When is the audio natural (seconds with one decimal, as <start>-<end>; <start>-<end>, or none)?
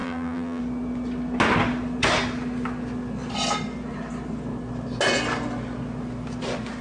0.6-6.8